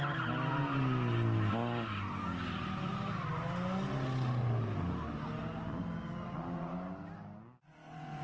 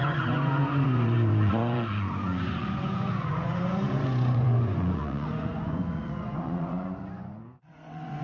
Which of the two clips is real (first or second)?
first